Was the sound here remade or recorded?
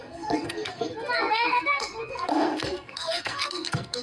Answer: remade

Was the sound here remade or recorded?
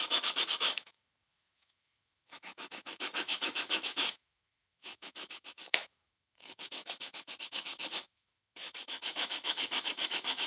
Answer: remade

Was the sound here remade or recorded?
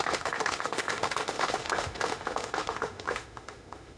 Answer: remade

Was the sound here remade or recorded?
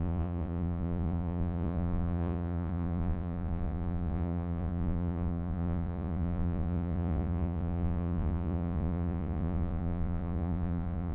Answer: remade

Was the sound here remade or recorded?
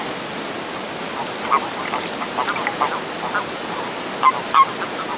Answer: recorded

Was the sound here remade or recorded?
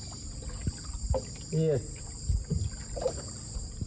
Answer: recorded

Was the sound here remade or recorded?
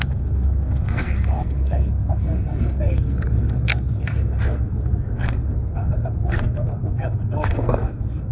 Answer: remade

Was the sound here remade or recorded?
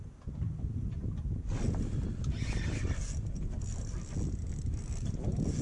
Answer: recorded